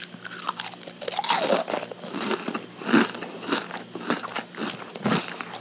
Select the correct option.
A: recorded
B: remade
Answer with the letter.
A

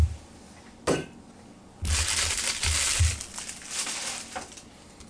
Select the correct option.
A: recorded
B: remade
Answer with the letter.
A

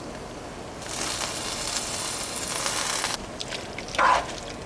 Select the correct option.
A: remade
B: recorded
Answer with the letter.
B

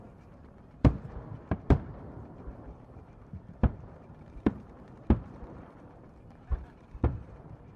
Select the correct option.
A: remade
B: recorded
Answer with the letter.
A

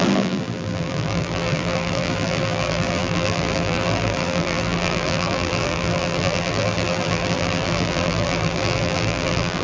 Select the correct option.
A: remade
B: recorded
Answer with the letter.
A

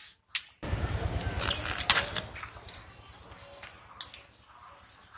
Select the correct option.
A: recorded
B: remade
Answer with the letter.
A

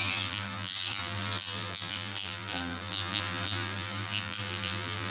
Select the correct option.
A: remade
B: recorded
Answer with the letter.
A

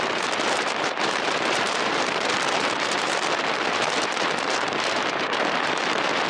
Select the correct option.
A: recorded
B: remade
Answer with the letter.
B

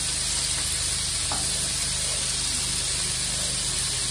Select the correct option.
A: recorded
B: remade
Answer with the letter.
A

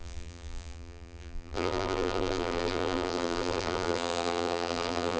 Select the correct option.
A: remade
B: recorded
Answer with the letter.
A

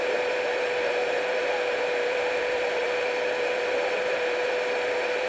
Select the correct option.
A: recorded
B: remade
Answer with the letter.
B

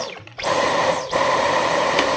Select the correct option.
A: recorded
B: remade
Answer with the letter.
B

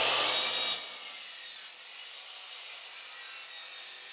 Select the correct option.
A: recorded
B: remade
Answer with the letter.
A